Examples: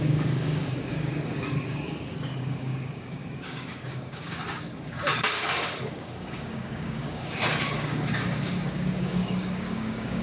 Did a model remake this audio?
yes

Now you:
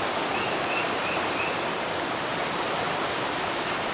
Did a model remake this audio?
no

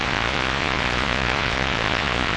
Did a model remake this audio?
yes